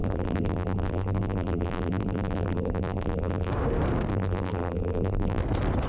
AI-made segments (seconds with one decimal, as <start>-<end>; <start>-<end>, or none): 0.0-3.5; 4.1-5.4